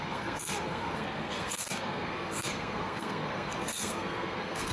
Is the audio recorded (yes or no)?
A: no